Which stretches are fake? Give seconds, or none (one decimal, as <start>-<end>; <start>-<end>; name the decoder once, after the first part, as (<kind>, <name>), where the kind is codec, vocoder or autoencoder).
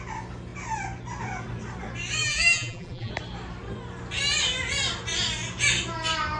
2.2-3.1 (vocoder, BigVGAN v2)